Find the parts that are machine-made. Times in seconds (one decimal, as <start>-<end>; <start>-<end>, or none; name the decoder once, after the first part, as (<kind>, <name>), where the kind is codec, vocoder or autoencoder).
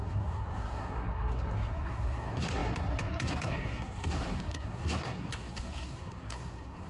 0.0-6.9 (codec, SNAC)